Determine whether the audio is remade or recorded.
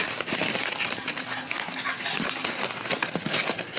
recorded